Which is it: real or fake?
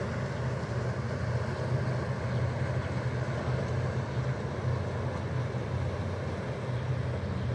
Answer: real